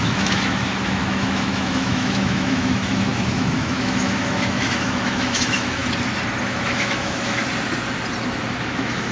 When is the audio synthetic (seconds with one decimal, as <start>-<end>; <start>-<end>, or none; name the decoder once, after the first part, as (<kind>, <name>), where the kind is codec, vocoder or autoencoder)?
0.0-5.8 (autoencoder, DAC-VAE); 6.4-7.4; 8.6-9.1